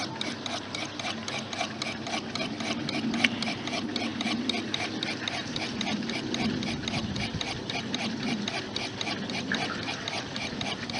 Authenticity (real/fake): real